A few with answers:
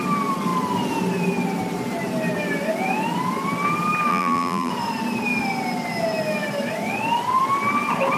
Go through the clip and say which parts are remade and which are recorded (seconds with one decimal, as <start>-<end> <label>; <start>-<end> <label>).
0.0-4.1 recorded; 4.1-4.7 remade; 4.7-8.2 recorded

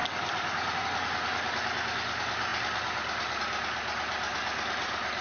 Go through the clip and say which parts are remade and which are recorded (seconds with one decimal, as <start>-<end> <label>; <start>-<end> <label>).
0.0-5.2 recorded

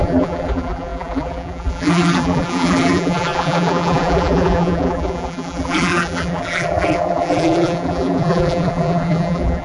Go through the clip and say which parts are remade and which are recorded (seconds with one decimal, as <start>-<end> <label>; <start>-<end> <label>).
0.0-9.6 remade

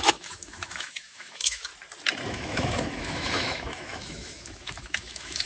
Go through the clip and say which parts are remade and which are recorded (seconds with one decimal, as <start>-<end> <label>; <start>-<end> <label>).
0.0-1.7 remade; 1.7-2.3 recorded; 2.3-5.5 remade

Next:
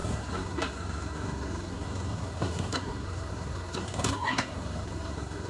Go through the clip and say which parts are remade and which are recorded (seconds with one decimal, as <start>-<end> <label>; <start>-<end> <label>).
0.0-5.5 remade

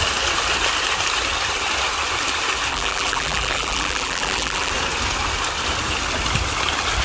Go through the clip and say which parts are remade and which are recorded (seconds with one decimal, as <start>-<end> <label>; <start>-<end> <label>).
0.0-2.7 recorded; 2.7-4.7 remade; 4.7-7.0 recorded

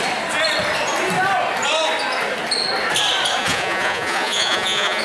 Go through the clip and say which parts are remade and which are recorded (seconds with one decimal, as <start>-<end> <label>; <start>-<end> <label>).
0.0-3.4 recorded; 3.4-5.0 remade